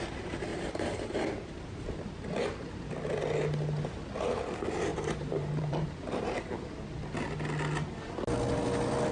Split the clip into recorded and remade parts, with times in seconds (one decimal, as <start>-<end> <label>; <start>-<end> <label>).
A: 0.0-0.5 recorded; 0.5-2.1 remade; 2.1-4.9 recorded; 4.9-6.3 remade; 6.3-9.1 recorded